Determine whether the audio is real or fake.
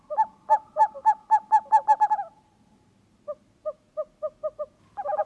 real